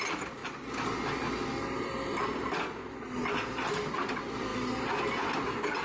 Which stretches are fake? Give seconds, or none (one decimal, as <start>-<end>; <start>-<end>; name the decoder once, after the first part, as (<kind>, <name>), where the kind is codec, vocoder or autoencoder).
none